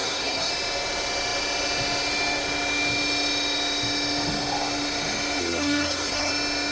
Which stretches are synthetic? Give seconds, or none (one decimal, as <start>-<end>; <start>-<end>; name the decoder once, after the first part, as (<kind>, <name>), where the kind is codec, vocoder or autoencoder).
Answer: 0.0-0.5 (codec, SNAC); 5.4-6.3